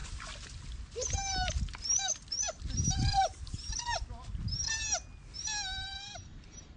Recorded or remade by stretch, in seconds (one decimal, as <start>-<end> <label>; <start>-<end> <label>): 0.0-6.8 recorded